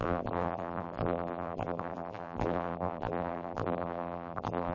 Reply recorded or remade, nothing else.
remade